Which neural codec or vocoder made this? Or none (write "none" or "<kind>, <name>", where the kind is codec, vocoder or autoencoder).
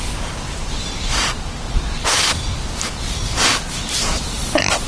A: none